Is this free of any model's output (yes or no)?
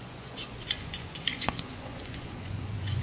no